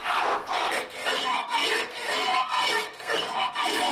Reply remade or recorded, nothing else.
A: remade